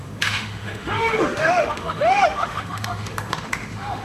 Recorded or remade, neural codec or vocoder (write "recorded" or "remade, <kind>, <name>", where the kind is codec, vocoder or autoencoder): remade, autoencoder, DAC-VAE